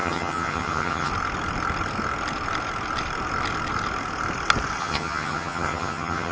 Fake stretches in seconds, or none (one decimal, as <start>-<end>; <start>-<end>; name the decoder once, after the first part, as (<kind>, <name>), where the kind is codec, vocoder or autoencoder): 0.0-1.1 (vocoder, HiFi-GAN); 4.8-6.3